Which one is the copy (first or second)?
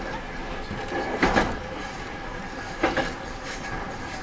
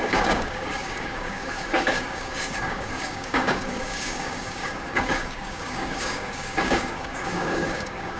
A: second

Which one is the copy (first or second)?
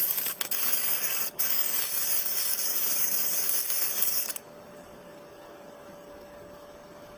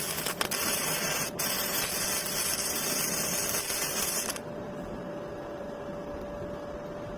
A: first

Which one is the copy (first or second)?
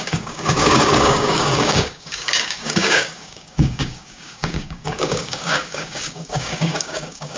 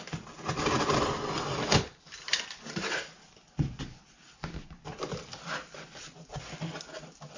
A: first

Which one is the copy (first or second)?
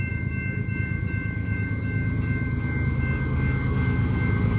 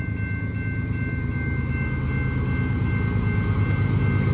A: first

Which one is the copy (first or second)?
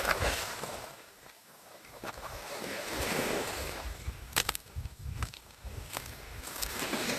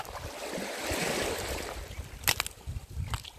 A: first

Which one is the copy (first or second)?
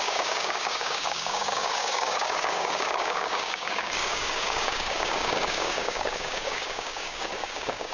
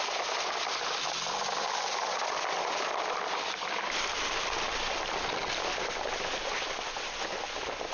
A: first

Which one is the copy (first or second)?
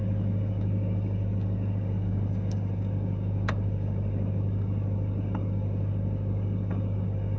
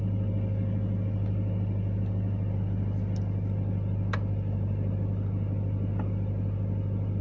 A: first